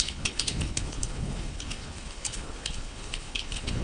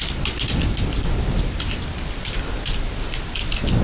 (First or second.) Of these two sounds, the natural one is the second